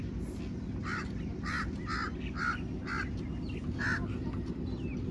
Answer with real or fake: real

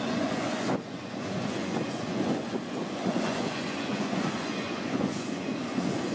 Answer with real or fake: fake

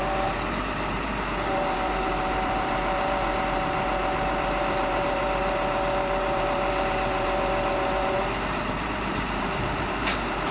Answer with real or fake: fake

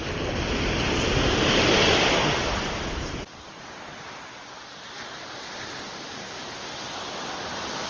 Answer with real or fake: real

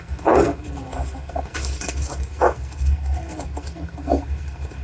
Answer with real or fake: fake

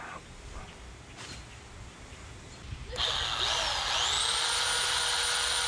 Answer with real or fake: real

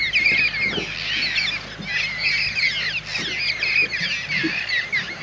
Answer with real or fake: real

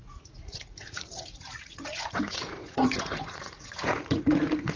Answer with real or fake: fake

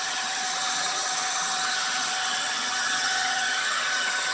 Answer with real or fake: fake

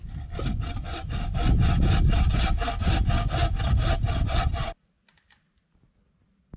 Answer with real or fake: real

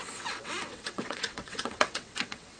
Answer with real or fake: fake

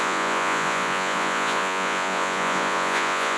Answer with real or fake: fake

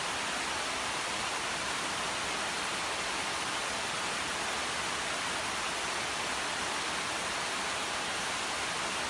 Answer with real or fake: real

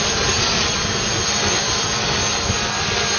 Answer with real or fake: real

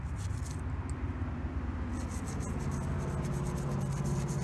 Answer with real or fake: real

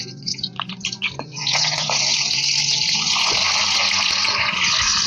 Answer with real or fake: fake